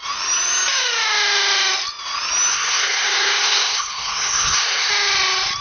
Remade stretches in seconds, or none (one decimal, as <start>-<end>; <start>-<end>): 2.5-4.9